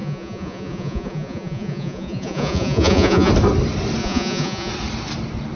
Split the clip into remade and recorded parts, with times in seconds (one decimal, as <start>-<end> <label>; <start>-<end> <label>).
0.0-3.3 remade; 3.3-4.0 recorded; 4.0-4.7 remade; 4.7-5.5 recorded